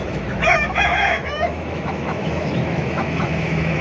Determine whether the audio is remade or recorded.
remade